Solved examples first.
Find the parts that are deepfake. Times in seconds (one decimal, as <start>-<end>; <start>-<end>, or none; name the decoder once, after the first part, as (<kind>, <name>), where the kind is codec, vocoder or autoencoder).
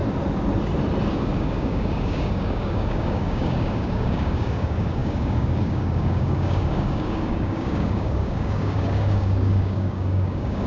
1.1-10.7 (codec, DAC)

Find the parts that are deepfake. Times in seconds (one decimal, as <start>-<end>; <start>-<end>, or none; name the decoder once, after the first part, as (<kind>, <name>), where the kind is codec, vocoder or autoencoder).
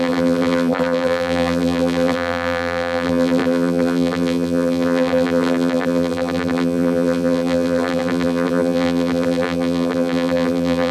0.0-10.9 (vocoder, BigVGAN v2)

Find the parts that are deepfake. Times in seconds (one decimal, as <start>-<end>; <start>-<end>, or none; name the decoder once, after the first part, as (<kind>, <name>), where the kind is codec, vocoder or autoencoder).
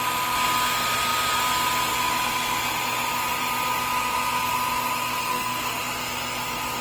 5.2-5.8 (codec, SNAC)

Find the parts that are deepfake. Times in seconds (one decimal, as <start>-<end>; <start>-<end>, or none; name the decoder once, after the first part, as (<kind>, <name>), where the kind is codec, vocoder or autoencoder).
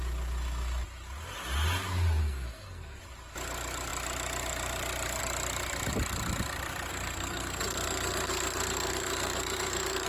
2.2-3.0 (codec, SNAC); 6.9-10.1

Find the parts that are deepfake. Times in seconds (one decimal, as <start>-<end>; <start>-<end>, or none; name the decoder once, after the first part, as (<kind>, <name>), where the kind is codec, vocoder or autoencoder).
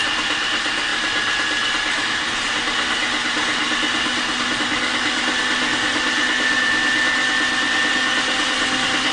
none